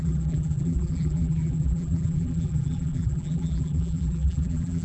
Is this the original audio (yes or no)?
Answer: no